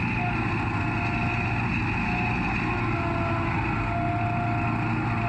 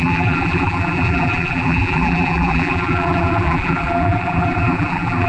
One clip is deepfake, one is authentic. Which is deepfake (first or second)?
second